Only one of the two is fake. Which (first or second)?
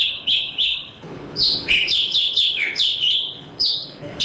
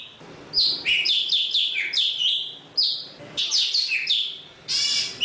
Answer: first